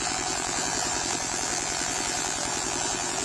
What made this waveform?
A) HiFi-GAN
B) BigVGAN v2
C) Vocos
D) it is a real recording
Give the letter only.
B